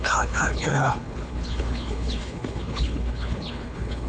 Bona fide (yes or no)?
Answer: no